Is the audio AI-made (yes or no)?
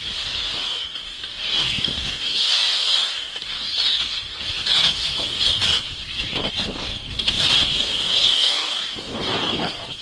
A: yes